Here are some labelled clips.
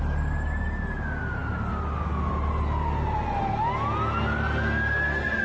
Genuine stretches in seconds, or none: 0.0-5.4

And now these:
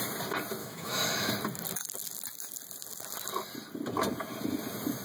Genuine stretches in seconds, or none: 0.0-0.6; 1.3-5.0

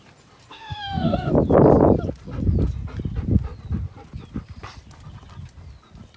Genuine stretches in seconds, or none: 0.0-0.5; 1.3-6.2